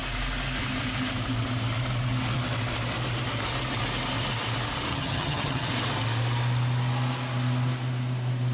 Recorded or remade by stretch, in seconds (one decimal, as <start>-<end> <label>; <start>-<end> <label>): 0.0-4.9 recorded; 4.9-5.7 remade; 5.7-8.5 recorded

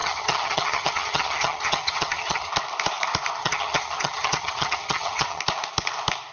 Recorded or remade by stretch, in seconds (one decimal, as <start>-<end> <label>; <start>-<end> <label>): 0.0-2.5 remade; 2.5-3.4 recorded; 3.4-5.4 remade; 5.4-6.3 recorded

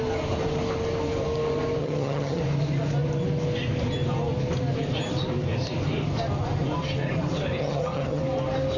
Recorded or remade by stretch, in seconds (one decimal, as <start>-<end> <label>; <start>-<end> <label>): 0.0-1.8 recorded; 1.8-2.4 remade; 2.4-7.6 recorded; 7.6-8.2 remade; 8.2-8.8 recorded

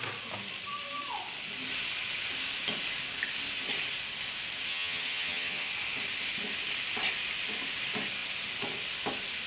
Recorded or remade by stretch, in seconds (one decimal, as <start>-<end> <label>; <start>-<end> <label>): 0.0-4.7 recorded; 4.7-5.7 remade; 5.7-9.5 recorded

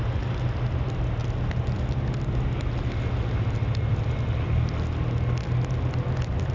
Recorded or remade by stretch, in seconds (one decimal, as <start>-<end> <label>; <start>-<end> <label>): 0.0-6.5 recorded

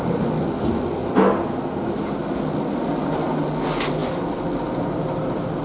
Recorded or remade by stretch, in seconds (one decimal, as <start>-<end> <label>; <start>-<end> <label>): 0.0-5.6 recorded